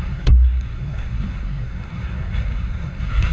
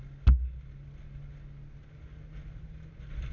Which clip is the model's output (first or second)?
first